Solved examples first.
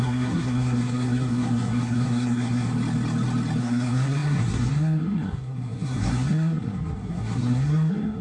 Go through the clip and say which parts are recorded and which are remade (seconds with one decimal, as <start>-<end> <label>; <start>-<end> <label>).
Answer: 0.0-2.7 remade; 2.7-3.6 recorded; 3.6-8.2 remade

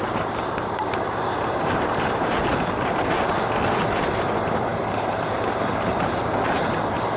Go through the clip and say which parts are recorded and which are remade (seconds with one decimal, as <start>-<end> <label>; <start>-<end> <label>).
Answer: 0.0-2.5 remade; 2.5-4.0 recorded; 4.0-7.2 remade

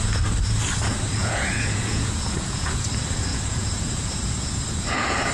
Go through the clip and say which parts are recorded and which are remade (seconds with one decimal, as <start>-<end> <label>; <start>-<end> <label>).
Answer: 0.0-1.2 recorded; 1.2-2.9 remade; 2.9-3.3 recorded; 3.3-5.3 remade